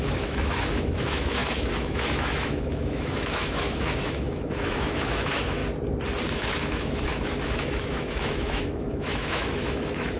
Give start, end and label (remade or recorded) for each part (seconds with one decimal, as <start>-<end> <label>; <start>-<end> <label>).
0.0-5.6 remade; 5.6-6.3 recorded; 6.3-10.2 remade